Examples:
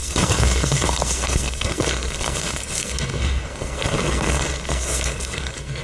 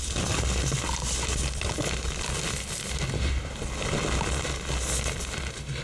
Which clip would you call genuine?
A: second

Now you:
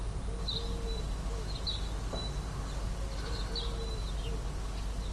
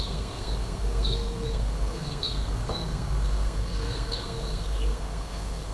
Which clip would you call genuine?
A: first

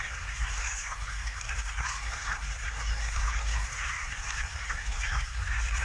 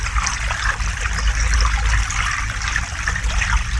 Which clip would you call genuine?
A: second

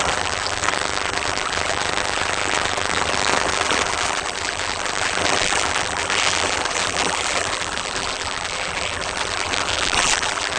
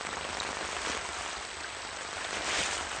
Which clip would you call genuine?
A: second